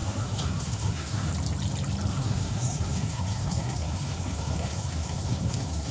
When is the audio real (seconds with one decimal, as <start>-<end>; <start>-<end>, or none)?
1.3-2.1